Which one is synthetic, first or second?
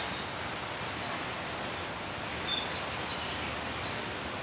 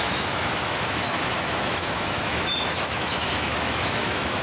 second